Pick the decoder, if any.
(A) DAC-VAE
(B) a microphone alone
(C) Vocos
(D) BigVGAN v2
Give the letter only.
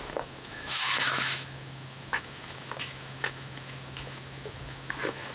A